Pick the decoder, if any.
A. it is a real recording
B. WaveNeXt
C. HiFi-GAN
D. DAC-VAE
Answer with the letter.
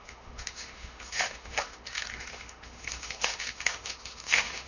D